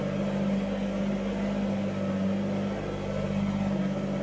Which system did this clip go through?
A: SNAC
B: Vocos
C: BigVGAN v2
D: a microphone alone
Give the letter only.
D